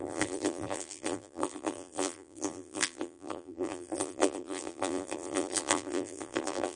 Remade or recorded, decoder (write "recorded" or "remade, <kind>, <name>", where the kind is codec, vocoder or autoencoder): remade, vocoder, BigVGAN v2